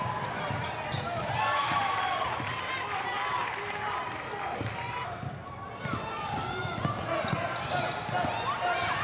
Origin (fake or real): real